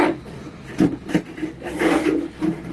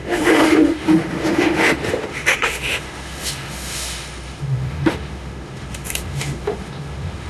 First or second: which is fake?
second